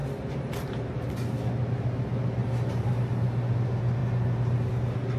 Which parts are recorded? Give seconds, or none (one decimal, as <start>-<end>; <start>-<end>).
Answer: 1.0-2.4; 2.9-5.2